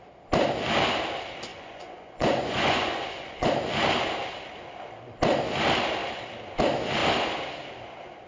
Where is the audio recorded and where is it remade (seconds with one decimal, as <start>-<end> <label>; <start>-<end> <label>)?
0.0-1.5 recorded; 1.5-3.5 remade; 3.5-8.3 recorded